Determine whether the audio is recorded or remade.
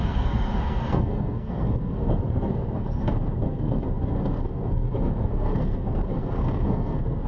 remade